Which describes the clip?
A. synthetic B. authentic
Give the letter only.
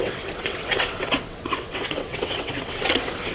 A